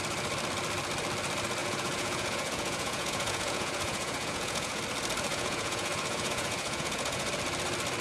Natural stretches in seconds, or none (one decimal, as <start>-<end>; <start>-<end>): 0.0-1.6; 4.8-5.3; 7.3-8.0

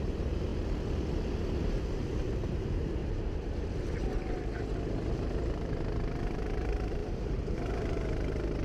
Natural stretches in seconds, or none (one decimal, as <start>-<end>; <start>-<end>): 0.5-1.9; 3.0-5.1

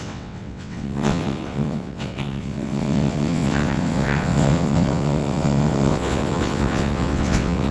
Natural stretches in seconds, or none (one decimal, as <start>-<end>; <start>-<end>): none

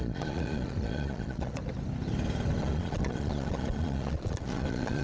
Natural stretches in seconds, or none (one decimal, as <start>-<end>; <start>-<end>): 1.6-2.6

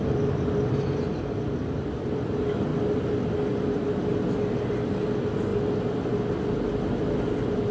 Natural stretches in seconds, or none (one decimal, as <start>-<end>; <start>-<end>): 0.0-7.7

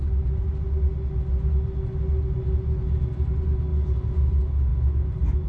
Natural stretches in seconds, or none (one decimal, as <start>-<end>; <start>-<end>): 0.0-5.5

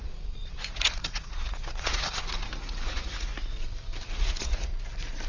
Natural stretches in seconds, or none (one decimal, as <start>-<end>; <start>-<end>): 3.3-4.1; 4.7-5.3